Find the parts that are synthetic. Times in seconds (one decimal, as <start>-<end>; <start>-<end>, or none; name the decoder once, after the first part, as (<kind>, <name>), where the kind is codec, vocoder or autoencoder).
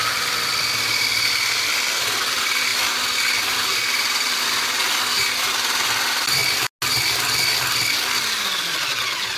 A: 0.0-2.7 (vocoder, BigVGAN v2); 3.4-4.8; 5.8-6.4